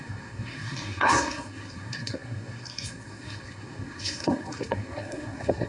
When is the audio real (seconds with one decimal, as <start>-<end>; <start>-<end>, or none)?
none